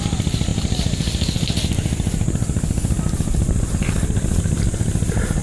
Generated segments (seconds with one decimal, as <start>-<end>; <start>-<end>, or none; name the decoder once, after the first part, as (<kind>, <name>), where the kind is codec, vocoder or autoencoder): none